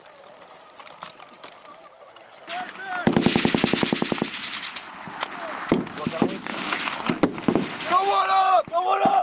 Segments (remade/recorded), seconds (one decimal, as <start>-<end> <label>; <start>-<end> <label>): 0.0-9.2 recorded